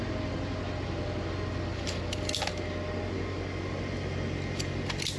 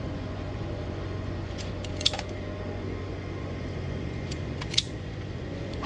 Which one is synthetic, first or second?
second